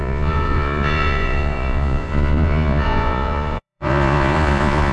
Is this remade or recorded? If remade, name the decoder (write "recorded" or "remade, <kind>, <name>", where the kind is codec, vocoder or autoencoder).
remade, vocoder, Vocos